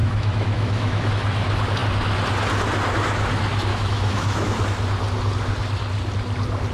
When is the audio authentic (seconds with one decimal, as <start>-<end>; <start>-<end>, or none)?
1.1-3.7; 4.6-6.7